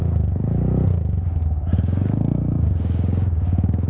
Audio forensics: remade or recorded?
remade